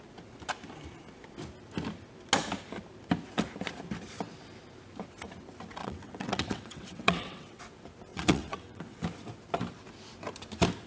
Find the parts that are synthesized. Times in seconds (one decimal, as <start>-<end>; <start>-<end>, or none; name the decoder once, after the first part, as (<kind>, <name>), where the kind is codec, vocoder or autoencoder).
5.8-7.6 (vocoder, WaveNeXt); 8.1-9.0